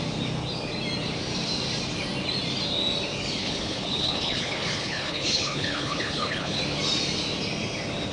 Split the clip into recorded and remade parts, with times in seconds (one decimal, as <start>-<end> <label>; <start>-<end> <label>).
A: 0.0-3.4 recorded; 3.4-6.6 remade; 6.6-8.1 recorded